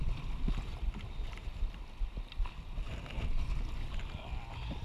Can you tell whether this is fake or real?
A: real